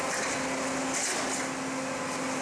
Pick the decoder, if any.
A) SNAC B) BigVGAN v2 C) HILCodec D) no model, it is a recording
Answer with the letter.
D